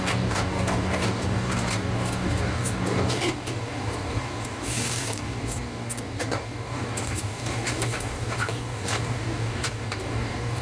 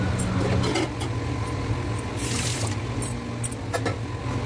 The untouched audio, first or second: second